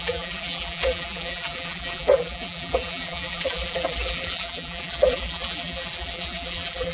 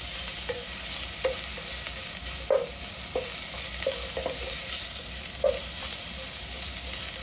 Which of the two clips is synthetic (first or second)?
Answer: first